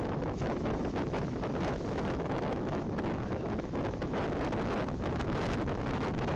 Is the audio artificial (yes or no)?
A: yes